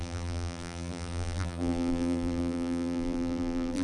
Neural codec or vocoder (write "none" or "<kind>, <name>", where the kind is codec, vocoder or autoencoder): vocoder, BigVGAN v2